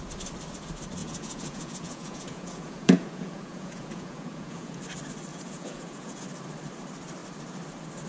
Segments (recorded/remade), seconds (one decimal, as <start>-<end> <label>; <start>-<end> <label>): 0.0-1.0 recorded; 1.0-4.8 remade; 4.8-5.3 recorded; 5.3-6.2 remade; 6.2-8.1 recorded